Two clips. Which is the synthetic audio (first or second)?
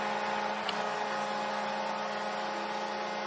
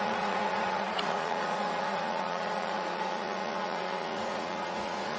second